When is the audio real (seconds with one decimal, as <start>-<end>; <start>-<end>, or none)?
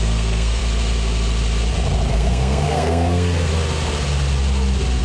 0.6-2.1; 3.5-5.0